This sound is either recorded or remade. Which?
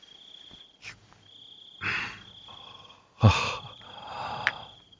recorded